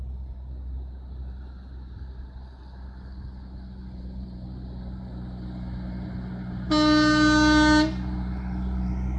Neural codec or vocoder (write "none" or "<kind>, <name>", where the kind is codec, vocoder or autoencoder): none